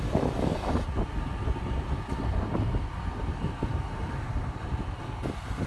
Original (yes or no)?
yes